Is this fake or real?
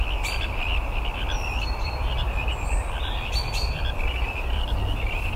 fake